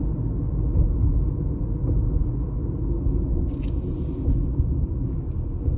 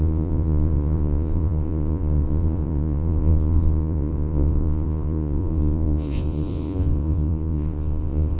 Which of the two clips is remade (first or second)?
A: second